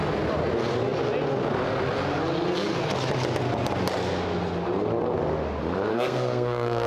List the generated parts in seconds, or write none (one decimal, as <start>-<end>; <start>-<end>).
5.9-6.9